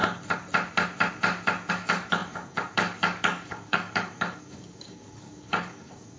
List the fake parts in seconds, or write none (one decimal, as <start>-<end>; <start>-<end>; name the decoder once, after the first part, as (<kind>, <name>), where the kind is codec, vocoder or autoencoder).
1.7-6.2 (codec, DAC)